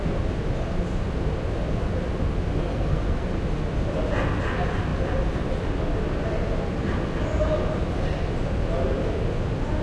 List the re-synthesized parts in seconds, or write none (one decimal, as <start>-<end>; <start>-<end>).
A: 2.7-3.4